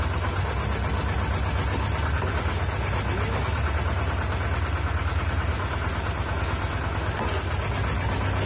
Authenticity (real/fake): real